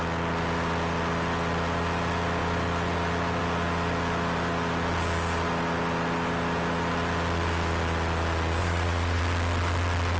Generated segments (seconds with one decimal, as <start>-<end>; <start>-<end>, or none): 8.6-9.2